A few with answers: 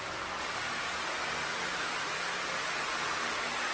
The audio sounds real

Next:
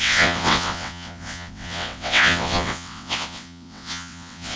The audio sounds fake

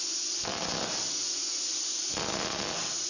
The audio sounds real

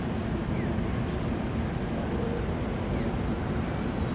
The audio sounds real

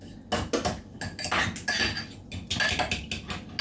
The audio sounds real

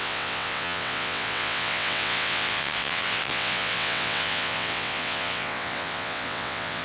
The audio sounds fake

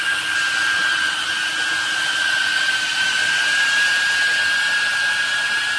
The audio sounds real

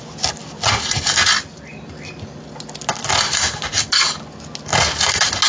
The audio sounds real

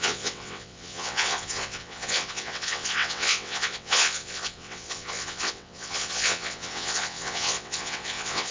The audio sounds fake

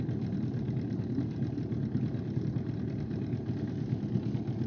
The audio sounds real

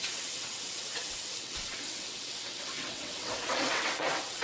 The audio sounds fake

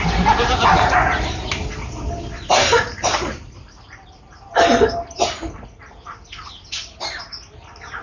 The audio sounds real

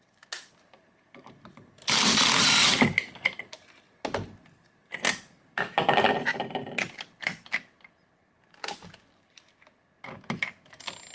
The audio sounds real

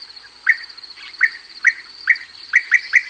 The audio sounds real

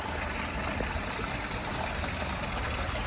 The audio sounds real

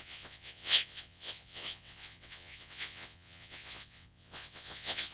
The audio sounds fake